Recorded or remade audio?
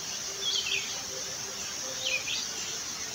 recorded